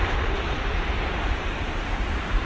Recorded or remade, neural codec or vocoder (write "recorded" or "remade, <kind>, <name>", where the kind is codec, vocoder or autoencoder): remade, vocoder, BigVGAN v2